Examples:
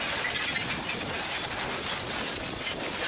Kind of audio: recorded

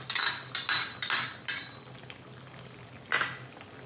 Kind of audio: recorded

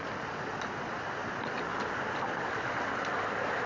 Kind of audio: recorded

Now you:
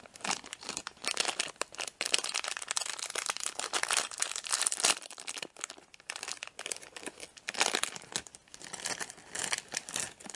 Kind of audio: recorded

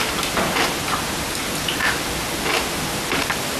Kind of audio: recorded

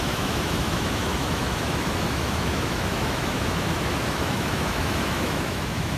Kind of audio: remade